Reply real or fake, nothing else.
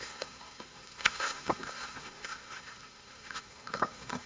fake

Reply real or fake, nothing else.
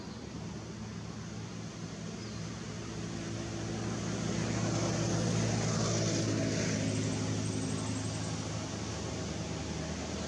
real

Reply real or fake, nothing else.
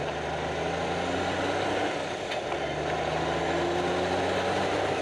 real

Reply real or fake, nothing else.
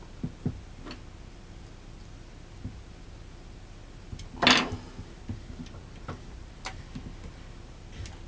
real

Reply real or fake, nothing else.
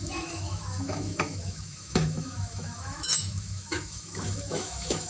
fake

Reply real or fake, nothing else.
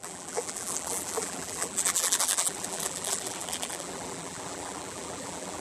fake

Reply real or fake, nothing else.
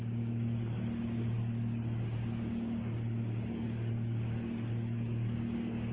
fake